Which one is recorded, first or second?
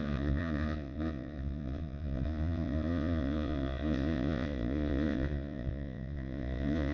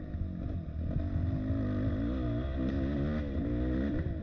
second